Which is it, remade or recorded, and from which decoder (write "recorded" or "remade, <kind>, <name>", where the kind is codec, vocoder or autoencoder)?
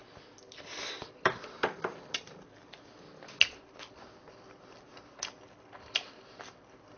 recorded